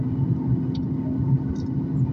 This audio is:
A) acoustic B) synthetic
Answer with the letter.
A